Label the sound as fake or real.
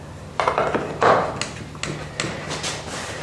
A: real